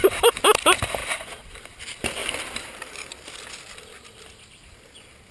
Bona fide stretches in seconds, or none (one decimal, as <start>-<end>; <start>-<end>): 0.0-1.0; 1.8-2.2; 3.1-5.3